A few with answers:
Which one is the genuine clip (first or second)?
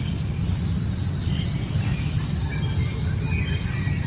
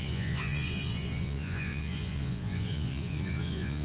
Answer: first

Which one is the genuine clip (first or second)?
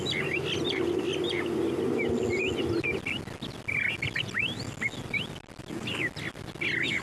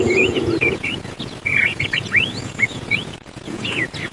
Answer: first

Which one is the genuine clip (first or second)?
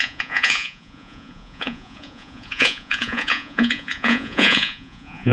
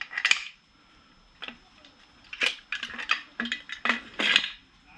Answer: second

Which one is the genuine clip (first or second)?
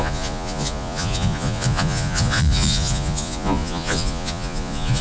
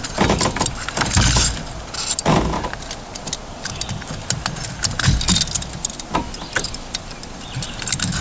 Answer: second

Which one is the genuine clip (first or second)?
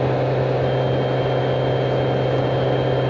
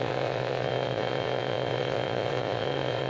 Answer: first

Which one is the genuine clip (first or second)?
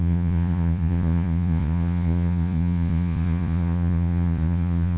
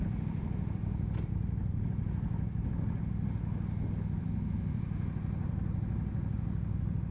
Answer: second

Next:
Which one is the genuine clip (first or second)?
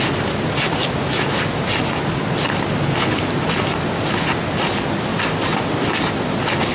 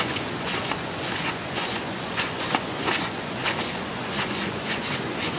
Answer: first